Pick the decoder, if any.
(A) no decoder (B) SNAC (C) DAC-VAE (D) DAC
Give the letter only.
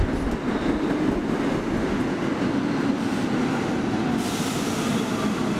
A